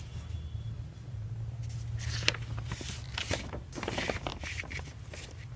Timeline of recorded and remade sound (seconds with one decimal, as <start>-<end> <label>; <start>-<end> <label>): 0.0-4.3 recorded; 4.3-5.6 remade